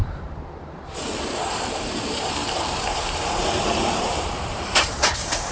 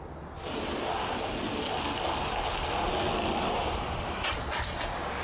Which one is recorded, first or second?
second